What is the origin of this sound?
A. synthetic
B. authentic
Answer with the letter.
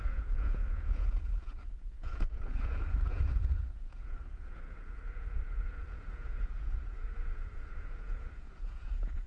A